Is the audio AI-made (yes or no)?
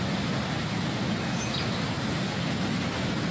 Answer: no